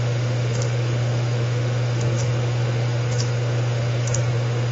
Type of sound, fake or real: fake